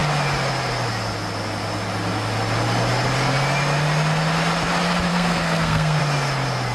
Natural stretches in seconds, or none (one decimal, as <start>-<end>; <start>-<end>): 0.0-5.1; 6.0-6.7